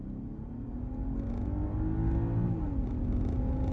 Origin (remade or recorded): recorded